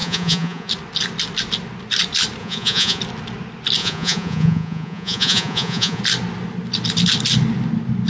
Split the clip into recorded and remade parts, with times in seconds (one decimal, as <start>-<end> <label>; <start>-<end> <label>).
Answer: 0.0-0.7 remade; 0.7-2.4 recorded; 2.4-3.0 remade; 3.0-3.8 recorded; 3.8-6.0 remade; 6.0-8.1 recorded